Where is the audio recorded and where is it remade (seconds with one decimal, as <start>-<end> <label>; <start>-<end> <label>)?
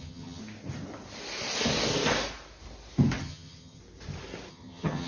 0.0-0.4 remade; 0.4-3.2 recorded; 3.2-3.8 remade; 3.8-4.5 recorded; 4.5-5.1 remade